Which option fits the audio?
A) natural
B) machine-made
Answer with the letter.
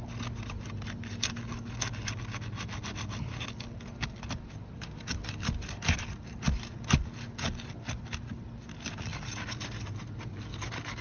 A